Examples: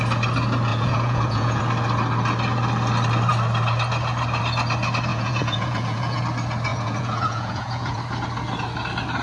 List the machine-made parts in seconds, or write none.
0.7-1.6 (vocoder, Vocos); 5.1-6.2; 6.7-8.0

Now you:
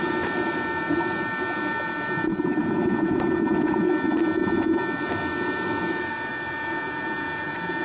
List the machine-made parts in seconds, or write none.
none

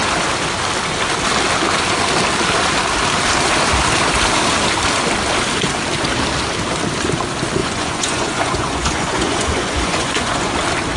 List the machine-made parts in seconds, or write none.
7.6-10.5 (vocoder, Vocos)

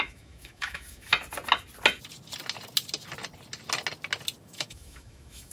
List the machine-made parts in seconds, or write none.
0.0-1.1 (autoencoder, DAC-VAE); 4.4-5.5

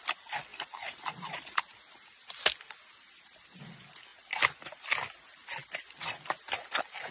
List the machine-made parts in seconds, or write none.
0.5-2.3 (vocoder, BigVGAN v2)